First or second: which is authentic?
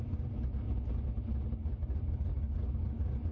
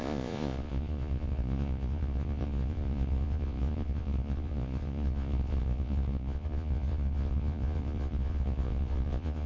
first